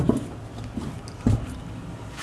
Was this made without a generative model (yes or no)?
yes